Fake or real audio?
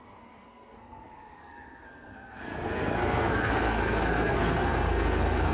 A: fake